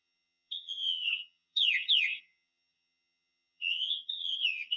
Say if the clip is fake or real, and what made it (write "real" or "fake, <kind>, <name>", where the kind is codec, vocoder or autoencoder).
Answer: fake, vocoder, HiFi-GAN